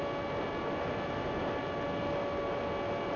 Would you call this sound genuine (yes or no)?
yes